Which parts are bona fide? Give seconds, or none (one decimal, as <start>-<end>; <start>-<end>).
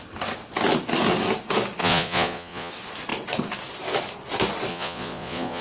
0.0-1.8; 2.7-4.7